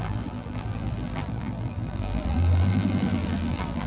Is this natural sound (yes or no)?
no